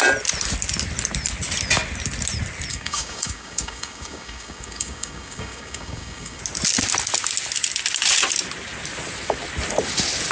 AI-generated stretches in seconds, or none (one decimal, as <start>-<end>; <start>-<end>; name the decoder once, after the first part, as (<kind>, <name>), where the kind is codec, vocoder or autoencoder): 2.7-6.4 (codec, DAC)